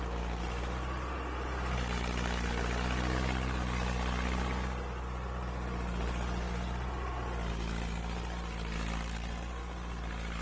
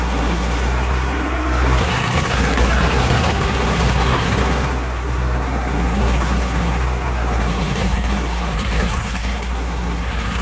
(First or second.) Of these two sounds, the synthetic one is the second